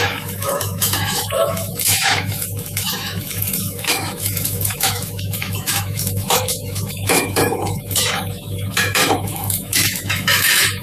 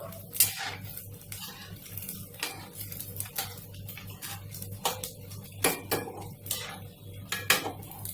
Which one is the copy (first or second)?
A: first